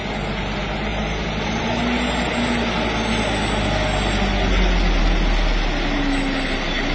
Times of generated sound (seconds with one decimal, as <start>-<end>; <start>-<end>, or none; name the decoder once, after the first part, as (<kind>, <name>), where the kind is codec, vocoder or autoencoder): none